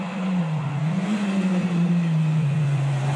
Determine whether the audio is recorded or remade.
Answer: remade